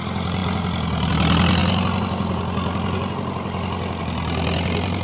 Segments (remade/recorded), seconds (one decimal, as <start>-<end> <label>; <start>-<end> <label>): 0.0-5.0 recorded